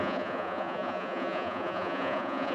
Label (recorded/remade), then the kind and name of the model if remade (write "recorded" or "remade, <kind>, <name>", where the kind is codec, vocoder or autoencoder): remade, vocoder, Vocos